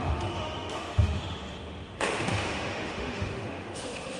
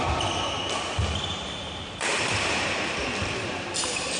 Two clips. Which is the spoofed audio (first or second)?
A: first